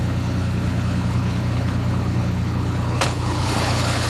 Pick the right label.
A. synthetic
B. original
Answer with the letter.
A